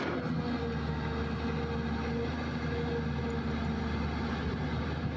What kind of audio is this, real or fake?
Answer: real